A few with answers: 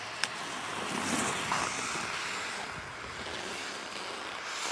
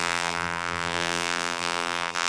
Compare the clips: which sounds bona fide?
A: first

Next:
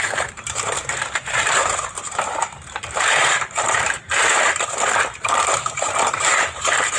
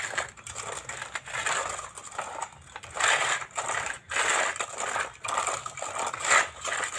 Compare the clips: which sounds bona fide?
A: second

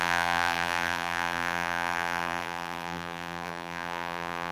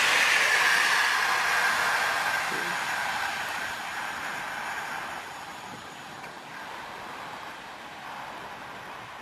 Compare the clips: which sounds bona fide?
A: second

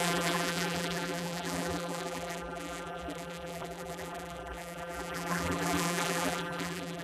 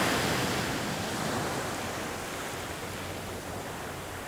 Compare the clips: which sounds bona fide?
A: second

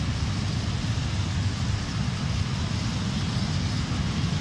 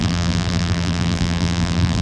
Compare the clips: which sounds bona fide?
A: first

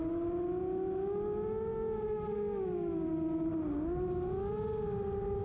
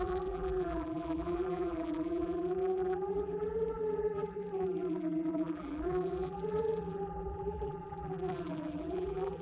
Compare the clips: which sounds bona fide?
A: first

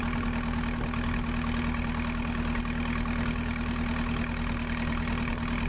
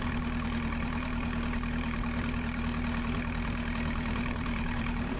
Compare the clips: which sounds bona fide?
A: first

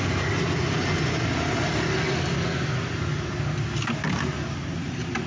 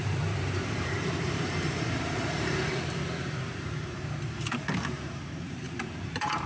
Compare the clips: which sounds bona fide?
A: first